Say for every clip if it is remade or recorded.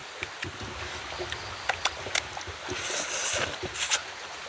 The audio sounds recorded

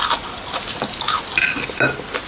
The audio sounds recorded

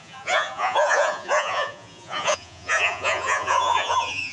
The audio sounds remade